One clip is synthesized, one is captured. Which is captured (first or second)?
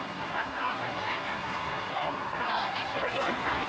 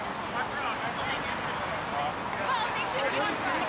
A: second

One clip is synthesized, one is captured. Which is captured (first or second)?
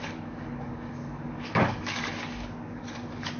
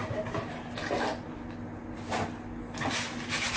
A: second